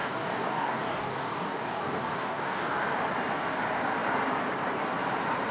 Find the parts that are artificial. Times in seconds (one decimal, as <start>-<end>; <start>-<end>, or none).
0.0-2.8